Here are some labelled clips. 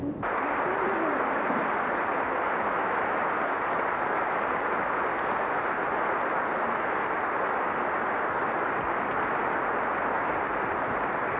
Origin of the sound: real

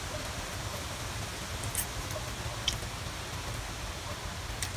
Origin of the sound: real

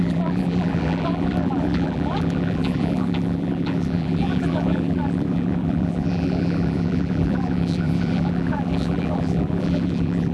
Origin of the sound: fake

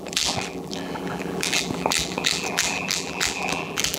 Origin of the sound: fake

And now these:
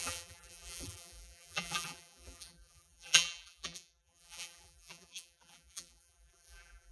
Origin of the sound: fake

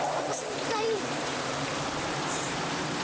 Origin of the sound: fake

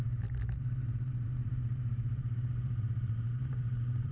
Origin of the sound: fake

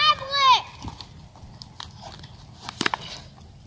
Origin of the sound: real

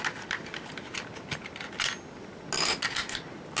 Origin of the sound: real